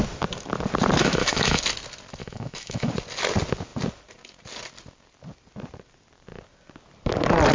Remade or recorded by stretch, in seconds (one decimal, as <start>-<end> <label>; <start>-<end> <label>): 0.0-1.0 recorded; 1.0-1.6 remade; 1.6-2.2 recorded; 2.2-2.9 remade; 2.9-7.5 recorded